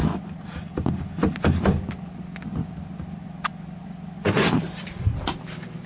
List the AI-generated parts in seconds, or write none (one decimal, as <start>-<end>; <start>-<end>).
none